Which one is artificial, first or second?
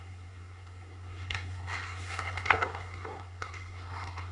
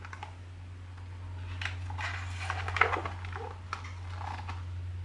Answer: first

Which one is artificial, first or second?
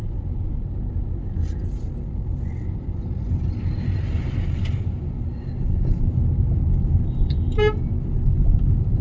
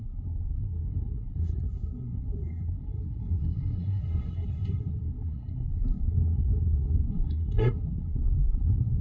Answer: second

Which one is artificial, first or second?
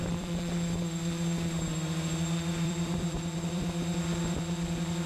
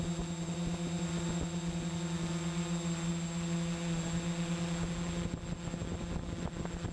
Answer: first